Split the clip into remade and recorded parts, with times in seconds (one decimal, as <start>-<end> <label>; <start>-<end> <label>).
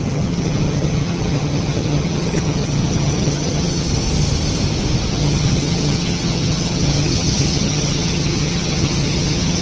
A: 0.0-3.9 remade; 3.9-5.1 recorded; 5.1-9.6 remade